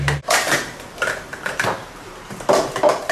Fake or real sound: fake